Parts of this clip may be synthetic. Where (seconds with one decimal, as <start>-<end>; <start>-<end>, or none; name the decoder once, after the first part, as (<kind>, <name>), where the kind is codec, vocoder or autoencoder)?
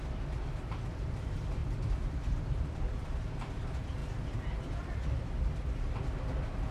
0.0-6.7 (vocoder, BigVGAN v2)